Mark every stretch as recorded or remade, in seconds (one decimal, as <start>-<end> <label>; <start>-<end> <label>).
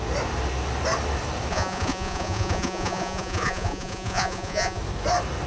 0.0-1.5 recorded; 1.5-4.8 remade; 4.8-5.5 recorded